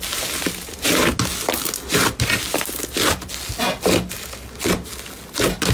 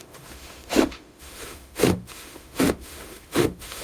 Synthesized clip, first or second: second